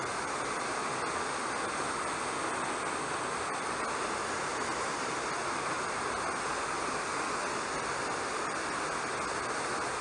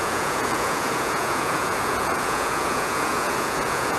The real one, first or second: first